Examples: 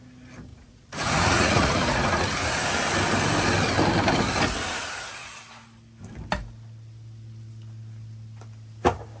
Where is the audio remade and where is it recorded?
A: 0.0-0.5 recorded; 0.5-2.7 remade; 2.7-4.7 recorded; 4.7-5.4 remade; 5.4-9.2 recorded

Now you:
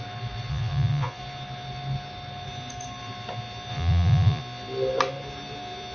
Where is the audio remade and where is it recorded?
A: 0.0-0.5 recorded; 0.5-1.2 remade; 1.2-3.7 recorded; 3.7-4.4 remade; 4.4-5.9 recorded

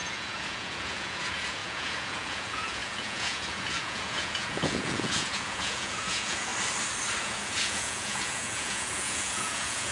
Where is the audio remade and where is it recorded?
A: 0.0-6.5 remade; 6.5-7.2 recorded; 7.2-9.9 remade

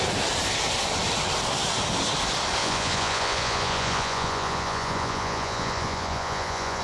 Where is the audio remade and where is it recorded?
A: 0.0-2.6 recorded; 2.6-6.8 remade

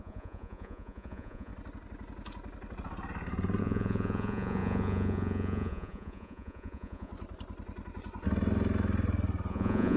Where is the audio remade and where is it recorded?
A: 0.0-1.5 remade; 1.5-3.6 recorded; 3.6-7.1 remade; 7.1-9.5 recorded; 9.5-10.0 remade

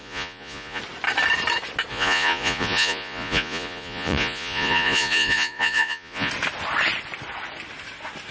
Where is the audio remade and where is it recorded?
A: 0.0-0.8 remade; 0.8-1.9 recorded; 1.9-6.3 remade; 6.3-8.3 recorded

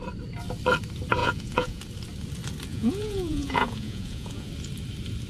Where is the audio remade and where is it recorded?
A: 0.0-1.2 recorded; 1.2-1.8 remade; 1.8-2.7 recorded; 2.7-4.5 remade; 4.5-5.3 recorded